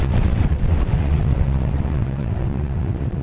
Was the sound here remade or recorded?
remade